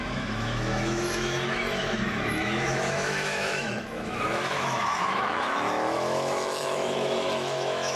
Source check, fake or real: fake